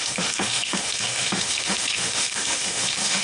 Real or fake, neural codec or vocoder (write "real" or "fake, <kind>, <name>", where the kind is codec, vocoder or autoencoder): fake, autoencoder, DAC-VAE